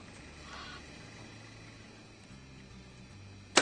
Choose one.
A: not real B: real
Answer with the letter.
B